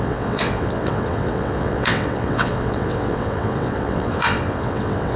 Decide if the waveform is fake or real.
fake